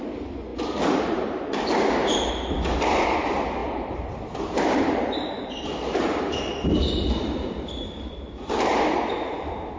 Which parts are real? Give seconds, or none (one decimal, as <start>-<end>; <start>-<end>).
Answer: 0.0-3.6; 8.3-9.8